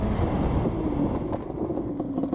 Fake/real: real